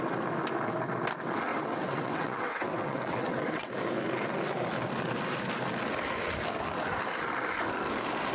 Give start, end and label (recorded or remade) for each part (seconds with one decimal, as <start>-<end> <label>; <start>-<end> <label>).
0.0-1.5 recorded; 1.5-3.7 remade; 3.7-8.3 recorded